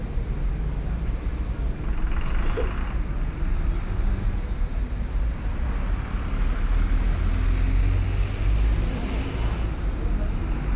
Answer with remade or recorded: recorded